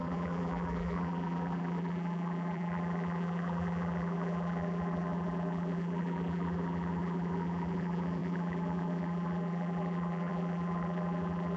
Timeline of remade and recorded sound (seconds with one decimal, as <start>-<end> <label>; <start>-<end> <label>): 0.0-11.6 remade

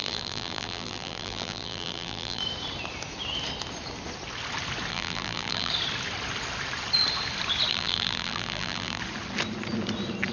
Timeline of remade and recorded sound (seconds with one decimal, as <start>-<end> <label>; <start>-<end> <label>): 0.0-2.4 remade; 2.4-4.9 recorded; 4.9-5.7 remade; 5.7-7.7 recorded; 7.7-9.0 remade; 9.0-10.3 recorded

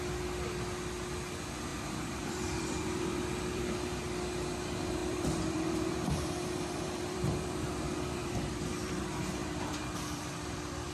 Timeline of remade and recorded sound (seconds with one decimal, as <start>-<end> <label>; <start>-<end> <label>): 0.0-1.7 recorded; 1.7-3.6 remade; 3.6-5.0 recorded; 5.0-9.0 remade; 9.0-9.4 recorded; 9.4-10.9 remade

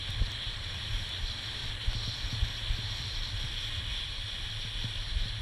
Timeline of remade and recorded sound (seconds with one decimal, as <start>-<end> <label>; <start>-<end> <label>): 0.0-0.9 remade; 0.9-5.4 recorded

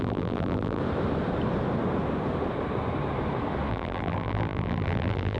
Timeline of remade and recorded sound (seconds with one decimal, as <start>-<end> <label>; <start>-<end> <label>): 0.0-0.8 remade; 0.8-3.7 recorded; 3.7-5.4 remade

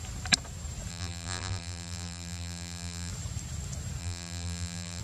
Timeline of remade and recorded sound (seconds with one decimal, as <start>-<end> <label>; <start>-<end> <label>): 0.0-0.9 recorded; 0.9-3.1 remade; 3.1-4.0 recorded; 4.0-5.0 remade

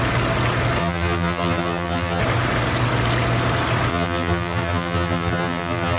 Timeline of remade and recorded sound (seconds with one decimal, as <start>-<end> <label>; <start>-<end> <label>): 0.0-0.8 recorded; 0.8-2.2 remade; 2.2-3.9 recorded; 3.9-6.0 remade